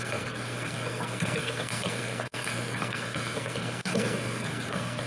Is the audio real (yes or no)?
no